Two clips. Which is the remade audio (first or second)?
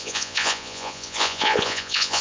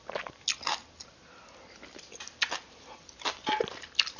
first